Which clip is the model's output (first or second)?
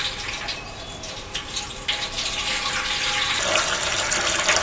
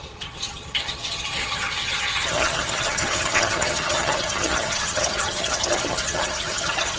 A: second